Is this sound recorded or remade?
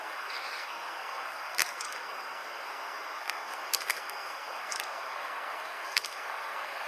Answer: remade